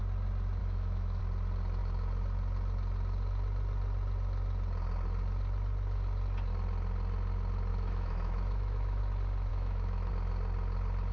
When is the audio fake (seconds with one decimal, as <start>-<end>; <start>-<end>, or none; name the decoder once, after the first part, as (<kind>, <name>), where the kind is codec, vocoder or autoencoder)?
0.6-1.2 (autoencoder, DAC-VAE); 7.7-9.0; 9.5-10.1